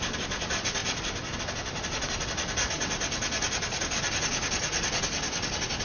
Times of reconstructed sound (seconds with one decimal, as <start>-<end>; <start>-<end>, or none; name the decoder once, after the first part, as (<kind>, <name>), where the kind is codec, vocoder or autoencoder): none